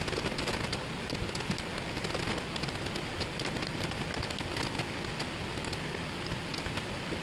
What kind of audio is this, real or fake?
real